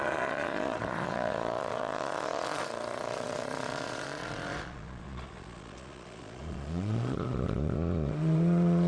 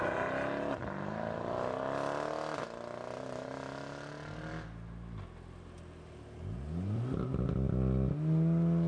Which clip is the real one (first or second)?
second